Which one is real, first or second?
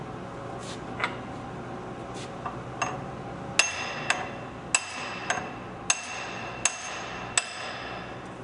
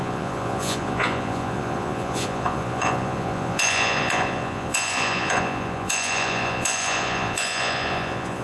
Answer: first